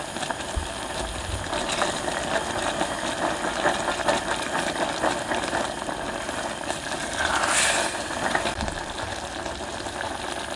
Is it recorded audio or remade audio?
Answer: recorded